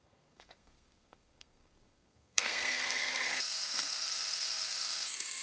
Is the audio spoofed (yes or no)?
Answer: yes